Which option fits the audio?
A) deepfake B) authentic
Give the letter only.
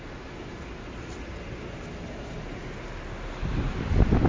B